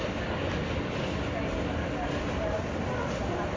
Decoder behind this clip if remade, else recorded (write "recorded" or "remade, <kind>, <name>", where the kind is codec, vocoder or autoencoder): recorded